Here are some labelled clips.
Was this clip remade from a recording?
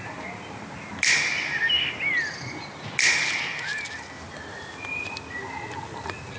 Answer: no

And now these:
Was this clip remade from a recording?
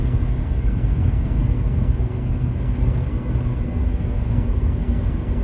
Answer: yes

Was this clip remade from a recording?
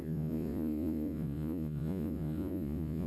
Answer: yes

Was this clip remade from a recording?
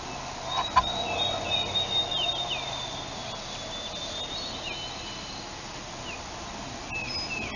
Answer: no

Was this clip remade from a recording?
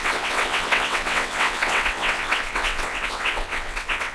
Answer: yes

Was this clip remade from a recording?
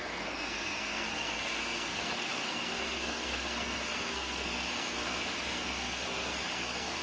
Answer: yes